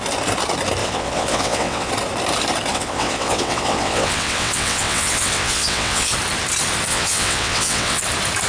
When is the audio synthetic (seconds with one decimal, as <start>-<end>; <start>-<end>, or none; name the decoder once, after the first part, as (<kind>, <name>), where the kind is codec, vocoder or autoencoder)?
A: 0.8-1.9 (vocoder, WaveNeXt); 2.7-6.1; 6.9-8.0